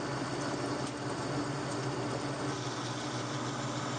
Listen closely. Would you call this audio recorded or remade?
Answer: recorded